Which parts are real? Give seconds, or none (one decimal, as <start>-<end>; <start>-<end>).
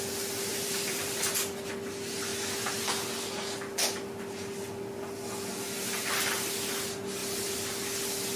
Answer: 0.0-0.5; 1.2-8.4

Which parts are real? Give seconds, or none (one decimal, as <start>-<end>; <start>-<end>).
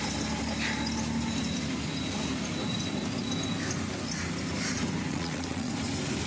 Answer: 0.0-5.1; 5.7-6.3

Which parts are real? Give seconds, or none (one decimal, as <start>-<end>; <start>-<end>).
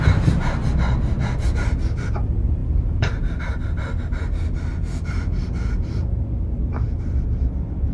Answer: 0.0-7.9